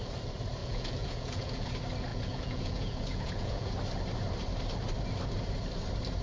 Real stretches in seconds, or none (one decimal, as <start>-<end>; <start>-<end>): 0.0-0.6; 1.7-2.1; 3.7-6.2